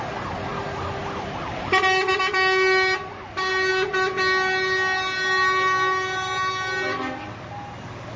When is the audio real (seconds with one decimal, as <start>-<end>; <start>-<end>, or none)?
0.0-8.2